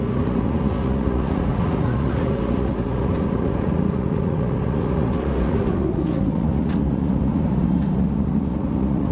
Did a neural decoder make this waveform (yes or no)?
yes